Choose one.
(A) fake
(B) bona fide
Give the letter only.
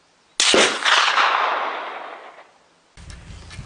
B